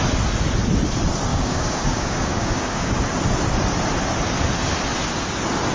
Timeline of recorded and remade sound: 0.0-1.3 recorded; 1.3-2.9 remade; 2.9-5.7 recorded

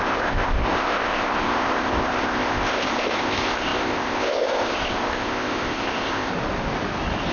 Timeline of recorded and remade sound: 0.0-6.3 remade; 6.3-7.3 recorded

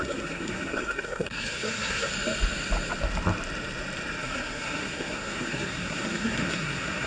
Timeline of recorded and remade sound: 0.0-2.1 remade; 2.1-4.2 recorded; 4.2-7.1 remade